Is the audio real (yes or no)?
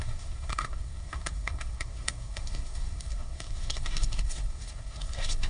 no